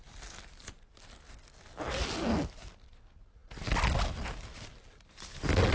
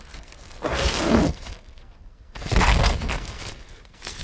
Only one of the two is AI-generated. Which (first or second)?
second